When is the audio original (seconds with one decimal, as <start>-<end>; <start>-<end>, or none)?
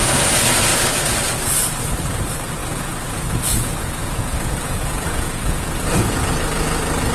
0.0-2.6; 6.3-7.1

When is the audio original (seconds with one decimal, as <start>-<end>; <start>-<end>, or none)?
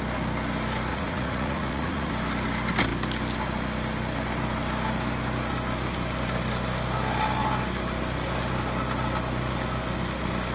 0.0-0.9; 2.1-10.5